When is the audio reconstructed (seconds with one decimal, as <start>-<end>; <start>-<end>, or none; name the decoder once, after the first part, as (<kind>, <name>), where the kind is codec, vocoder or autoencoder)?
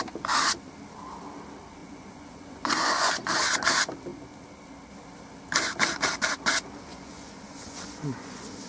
1.8-3.1 (vocoder, Vocos); 6.9-8.7